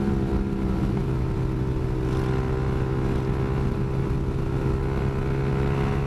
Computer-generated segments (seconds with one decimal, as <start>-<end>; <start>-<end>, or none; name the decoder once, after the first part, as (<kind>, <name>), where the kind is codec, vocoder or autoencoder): none